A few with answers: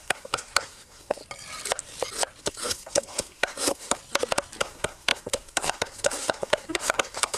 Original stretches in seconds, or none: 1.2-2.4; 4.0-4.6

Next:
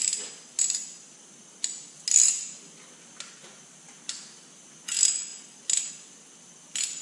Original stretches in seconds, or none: 0.0-7.0

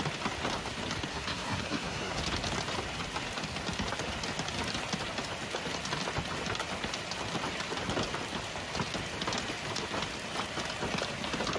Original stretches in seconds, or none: 0.0-1.1; 2.2-11.6

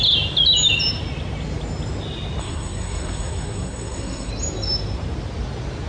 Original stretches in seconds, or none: 0.0-2.4; 4.3-5.9

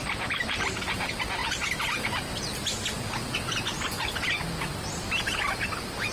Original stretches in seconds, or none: 0.8-6.1

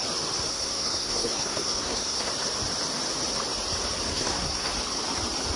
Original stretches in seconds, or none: 0.0-0.5; 2.3-4.1; 4.7-5.6

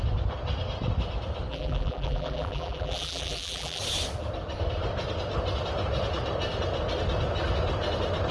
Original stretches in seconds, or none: 0.0-1.5; 3.8-8.3

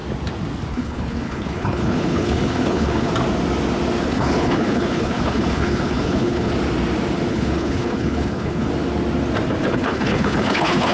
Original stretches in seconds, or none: 0.0-0.7; 3.1-4.0; 6.5-7.3; 8.7-9.7